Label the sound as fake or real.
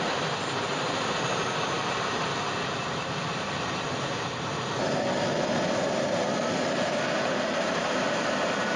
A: fake